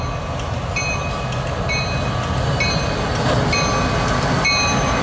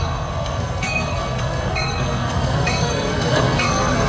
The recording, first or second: first